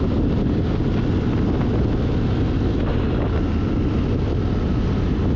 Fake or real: real